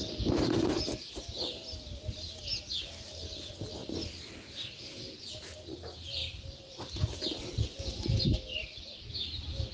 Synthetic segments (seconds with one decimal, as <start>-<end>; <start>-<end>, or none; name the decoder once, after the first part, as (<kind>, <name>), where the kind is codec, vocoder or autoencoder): 3.8-4.8 (vocoder, BigVGAN v2); 6.2-7.4; 8.6-9.1